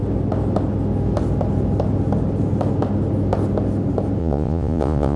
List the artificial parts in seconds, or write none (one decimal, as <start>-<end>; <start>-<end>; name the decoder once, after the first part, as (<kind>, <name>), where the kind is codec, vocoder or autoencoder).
4.2-5.2 (vocoder, Vocos)